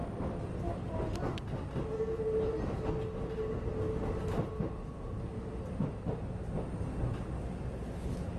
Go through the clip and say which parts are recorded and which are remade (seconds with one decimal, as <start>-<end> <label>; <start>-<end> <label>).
0.0-8.4 recorded

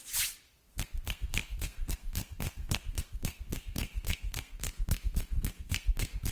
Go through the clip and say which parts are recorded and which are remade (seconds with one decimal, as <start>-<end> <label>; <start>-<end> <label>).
0.0-0.7 recorded; 0.7-6.3 remade

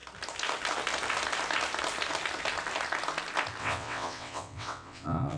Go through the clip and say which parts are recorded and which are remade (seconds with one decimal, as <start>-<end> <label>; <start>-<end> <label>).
0.0-3.6 recorded; 3.6-5.4 remade

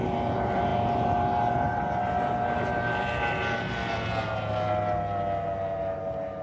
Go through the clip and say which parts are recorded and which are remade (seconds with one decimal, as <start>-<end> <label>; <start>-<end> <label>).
0.0-6.4 recorded

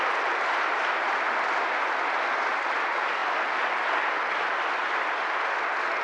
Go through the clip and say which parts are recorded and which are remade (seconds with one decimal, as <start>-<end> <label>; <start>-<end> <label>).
0.0-6.0 recorded

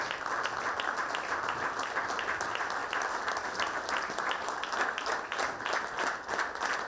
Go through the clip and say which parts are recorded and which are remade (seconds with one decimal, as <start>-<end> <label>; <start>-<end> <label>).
0.0-6.9 recorded

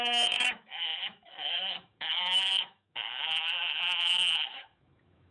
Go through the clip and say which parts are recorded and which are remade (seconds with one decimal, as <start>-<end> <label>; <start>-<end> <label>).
0.0-5.3 remade